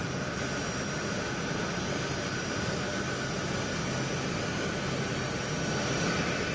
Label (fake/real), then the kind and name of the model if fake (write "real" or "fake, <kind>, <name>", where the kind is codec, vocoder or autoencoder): real